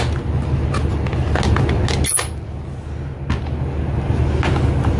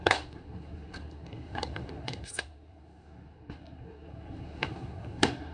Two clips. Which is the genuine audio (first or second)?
first